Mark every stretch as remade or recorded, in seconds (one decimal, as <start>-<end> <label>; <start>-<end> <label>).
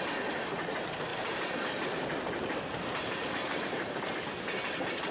0.0-1.1 recorded; 1.1-4.1 remade; 4.1-5.1 recorded